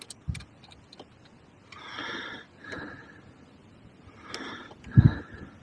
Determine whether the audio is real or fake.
real